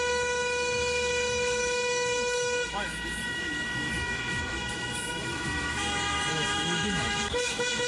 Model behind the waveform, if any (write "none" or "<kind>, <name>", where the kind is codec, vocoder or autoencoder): autoencoder, DAC-VAE